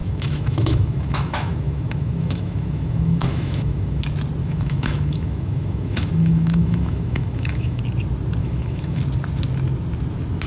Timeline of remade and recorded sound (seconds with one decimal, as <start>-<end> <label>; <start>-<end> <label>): 0.0-4.0 remade; 4.0-4.4 recorded; 4.4-7.8 remade; 7.8-8.4 recorded; 8.4-9.0 remade; 9.0-10.5 recorded